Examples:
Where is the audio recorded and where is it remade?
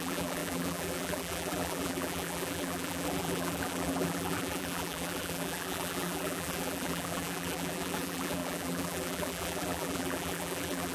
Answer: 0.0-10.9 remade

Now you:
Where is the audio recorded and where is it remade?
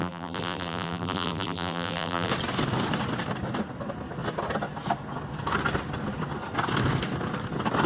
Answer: 0.0-2.3 remade; 2.3-7.9 recorded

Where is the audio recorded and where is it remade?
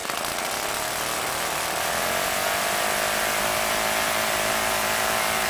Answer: 0.0-1.3 recorded; 1.3-5.5 remade